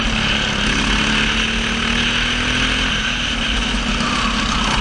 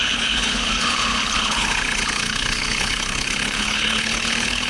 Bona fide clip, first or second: first